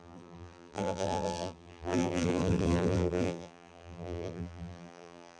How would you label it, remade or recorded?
remade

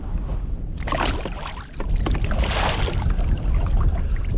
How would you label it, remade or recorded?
recorded